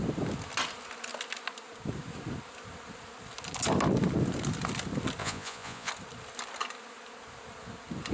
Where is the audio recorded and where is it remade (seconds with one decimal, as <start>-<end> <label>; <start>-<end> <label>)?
0.0-5.2 recorded; 5.2-5.9 remade; 5.9-8.1 recorded